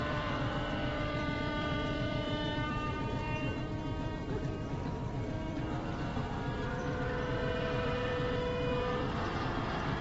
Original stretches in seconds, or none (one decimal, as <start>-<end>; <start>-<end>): 6.1-6.7; 8.1-8.7

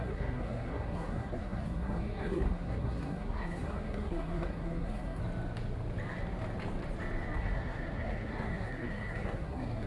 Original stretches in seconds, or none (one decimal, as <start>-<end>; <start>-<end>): 5.2-7.4